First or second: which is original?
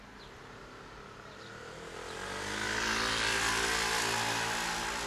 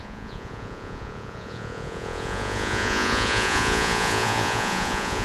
first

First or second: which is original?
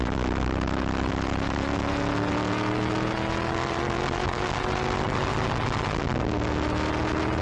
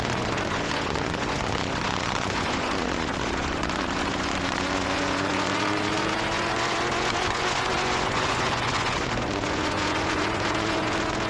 first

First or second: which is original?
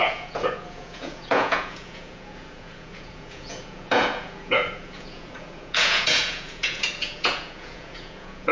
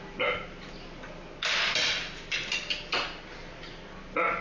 second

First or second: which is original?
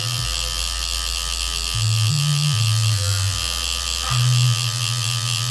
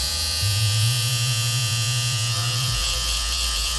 first